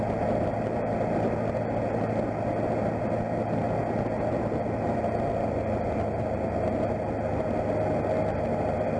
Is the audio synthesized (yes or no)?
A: no